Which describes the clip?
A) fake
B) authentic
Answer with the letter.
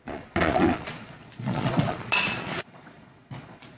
A